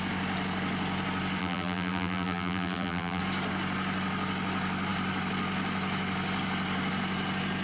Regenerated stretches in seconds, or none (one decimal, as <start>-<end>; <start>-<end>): 1.4-3.2